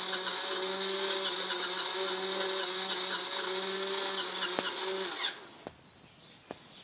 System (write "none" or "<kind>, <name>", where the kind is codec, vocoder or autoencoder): none